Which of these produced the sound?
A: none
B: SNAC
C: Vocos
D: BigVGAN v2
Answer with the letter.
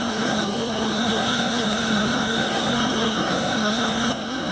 B